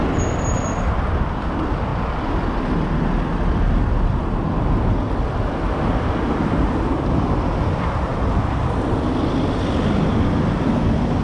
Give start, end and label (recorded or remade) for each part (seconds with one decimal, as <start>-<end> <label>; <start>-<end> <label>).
0.0-11.2 recorded

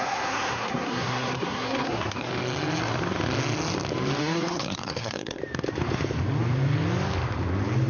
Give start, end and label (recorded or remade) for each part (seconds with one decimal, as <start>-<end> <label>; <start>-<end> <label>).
0.0-2.3 remade; 2.3-4.2 recorded; 4.2-5.4 remade; 5.4-7.9 recorded

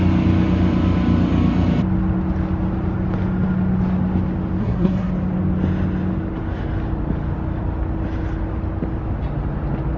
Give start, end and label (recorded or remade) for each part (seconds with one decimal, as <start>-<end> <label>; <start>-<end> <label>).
0.0-4.6 recorded; 4.6-5.1 remade; 5.1-10.0 recorded

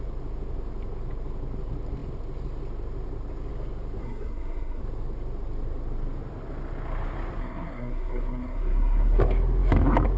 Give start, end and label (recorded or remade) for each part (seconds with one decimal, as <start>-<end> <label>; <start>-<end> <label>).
0.0-4.0 recorded; 4.0-4.8 remade; 4.8-7.4 recorded; 7.4-9.2 remade; 9.2-10.2 recorded

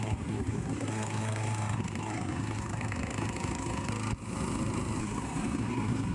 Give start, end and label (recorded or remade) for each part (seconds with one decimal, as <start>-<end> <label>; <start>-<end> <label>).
0.0-3.9 remade; 3.9-5.0 recorded; 5.0-6.1 remade